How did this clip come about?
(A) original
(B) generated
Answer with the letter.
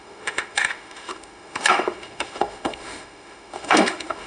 B